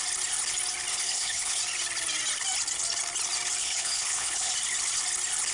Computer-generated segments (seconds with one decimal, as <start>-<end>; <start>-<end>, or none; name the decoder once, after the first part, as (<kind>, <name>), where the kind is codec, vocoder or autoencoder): 0.9-1.6 (codec, HILCodec); 3.6-4.5